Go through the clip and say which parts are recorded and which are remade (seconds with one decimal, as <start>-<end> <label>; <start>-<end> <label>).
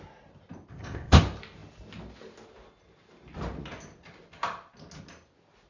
0.0-0.7 recorded; 0.7-1.2 remade; 1.2-5.7 recorded